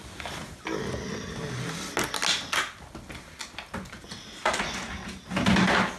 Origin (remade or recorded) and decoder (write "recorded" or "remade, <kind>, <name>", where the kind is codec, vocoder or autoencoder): recorded